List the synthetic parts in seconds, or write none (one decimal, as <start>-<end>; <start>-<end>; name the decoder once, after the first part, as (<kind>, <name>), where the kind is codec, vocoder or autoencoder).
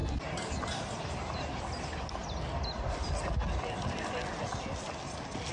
none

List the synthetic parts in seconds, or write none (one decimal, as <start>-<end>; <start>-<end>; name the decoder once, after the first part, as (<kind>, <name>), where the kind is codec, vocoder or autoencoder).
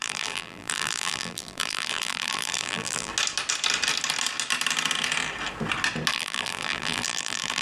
0.0-3.1 (vocoder, BigVGAN v2); 6.1-7.6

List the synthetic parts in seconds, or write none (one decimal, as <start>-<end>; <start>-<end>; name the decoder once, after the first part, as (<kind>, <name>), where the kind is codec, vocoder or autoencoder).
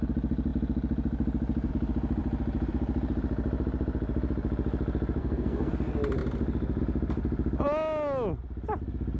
5.2-5.7 (codec, SNAC)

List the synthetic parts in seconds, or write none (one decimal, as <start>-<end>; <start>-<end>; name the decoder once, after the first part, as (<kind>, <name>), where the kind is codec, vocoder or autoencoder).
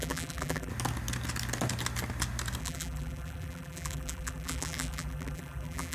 0.0-0.7 (vocoder, BigVGAN v2); 2.6-5.9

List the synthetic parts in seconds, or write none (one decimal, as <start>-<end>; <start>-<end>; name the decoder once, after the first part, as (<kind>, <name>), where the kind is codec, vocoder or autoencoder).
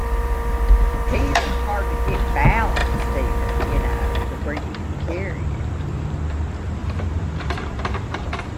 0.0-1.8 (vocoder, BigVGAN v2); 6.8-8.6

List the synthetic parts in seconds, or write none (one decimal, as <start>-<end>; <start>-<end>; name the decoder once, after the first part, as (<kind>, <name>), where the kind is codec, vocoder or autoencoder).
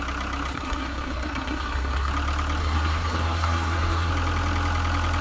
0.5-2.1 (codec, SNAC); 2.6-4.1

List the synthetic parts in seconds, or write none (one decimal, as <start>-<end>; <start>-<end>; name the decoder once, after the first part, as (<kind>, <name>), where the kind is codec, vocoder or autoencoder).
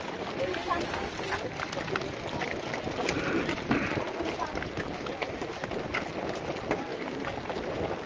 none